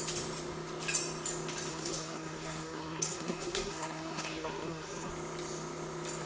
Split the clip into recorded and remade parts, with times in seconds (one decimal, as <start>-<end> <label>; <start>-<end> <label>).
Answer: 0.0-1.7 recorded; 1.7-5.1 remade; 5.1-6.3 recorded